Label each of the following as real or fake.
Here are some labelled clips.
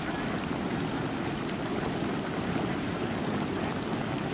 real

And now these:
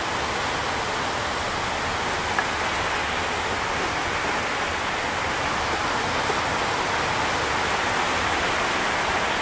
real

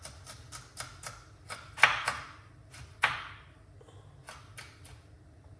real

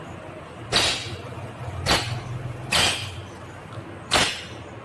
fake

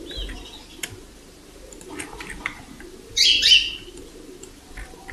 fake